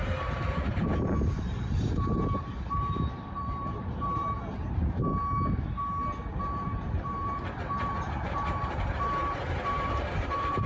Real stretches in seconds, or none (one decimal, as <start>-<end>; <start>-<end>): 5.1-6.4